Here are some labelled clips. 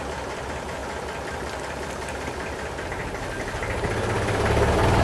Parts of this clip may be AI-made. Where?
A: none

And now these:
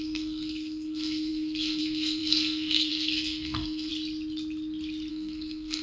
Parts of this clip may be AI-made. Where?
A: 0.0-3.9 (codec, SNAC); 5.1-5.8